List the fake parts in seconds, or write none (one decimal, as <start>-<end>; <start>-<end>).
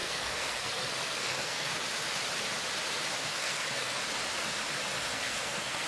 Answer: 0.0-1.7; 3.3-4.0; 5.1-5.9